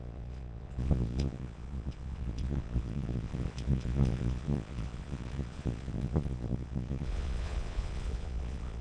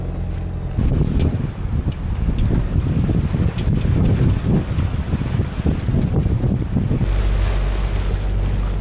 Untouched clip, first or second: second